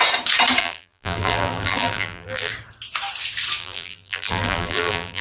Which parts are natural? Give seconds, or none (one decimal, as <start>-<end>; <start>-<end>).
0.0-0.6; 2.5-3.6